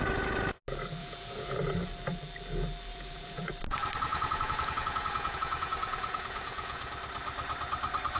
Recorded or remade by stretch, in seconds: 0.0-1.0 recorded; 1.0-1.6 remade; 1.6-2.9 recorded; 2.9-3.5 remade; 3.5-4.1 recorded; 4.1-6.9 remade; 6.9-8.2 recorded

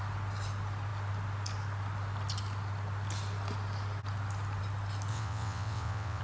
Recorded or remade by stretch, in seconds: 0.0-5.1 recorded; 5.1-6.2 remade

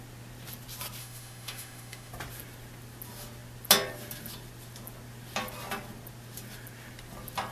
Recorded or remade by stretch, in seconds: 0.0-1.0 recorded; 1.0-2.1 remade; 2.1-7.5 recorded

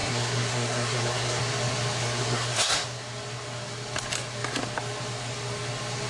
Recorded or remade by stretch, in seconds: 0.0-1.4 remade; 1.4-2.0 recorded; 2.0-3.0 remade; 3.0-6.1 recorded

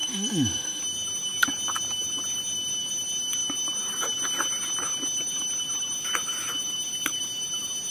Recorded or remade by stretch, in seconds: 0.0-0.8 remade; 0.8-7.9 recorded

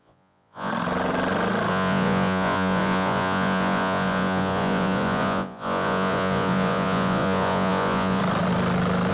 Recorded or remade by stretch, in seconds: 0.0-0.7 remade; 0.7-1.7 recorded; 1.7-8.2 remade; 8.2-9.1 recorded